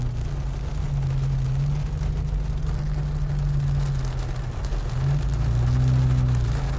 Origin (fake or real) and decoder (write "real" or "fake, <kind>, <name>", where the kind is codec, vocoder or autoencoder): real